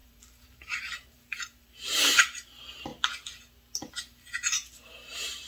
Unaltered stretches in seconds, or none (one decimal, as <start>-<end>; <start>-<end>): 2.9-3.9